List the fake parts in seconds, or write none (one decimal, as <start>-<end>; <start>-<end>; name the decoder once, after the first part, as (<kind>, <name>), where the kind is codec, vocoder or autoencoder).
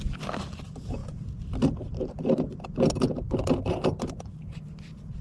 none